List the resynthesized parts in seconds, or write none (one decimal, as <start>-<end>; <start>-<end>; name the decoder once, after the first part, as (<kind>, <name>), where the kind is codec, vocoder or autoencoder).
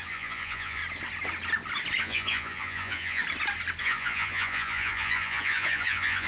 0.0-0.8 (vocoder, Vocos); 2.0-3.2; 3.8-6.3